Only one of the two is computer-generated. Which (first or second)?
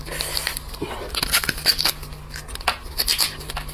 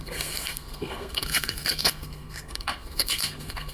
second